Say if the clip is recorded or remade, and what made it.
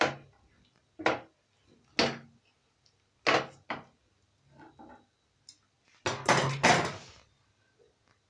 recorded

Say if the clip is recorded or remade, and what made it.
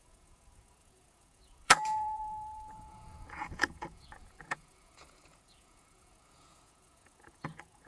remade, vocoder, Vocos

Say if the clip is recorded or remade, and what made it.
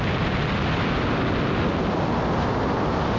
recorded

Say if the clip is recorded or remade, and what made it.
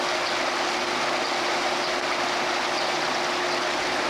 recorded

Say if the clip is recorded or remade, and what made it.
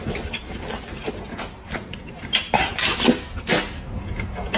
recorded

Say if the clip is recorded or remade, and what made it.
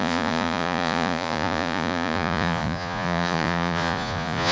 remade, vocoder, Vocos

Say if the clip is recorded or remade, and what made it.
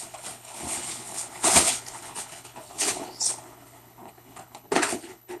remade, codec, HILCodec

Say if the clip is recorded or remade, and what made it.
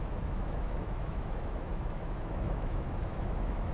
remade, autoencoder, DAC-VAE